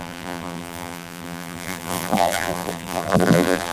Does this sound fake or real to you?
fake